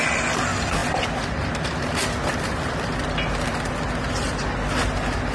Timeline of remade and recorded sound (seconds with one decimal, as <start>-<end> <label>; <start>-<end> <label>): 0.0-5.3 recorded